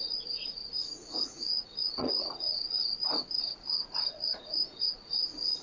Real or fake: fake